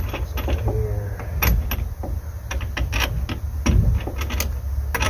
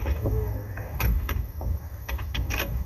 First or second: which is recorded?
first